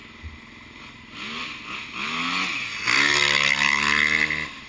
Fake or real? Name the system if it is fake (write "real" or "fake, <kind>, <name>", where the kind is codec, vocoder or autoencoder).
real